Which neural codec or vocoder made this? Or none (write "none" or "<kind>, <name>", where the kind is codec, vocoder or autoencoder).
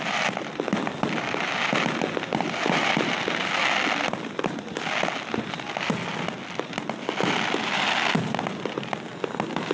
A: none